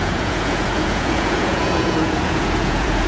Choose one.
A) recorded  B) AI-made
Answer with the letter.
B